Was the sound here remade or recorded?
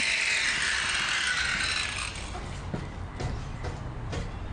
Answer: recorded